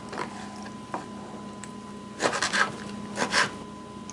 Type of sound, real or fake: real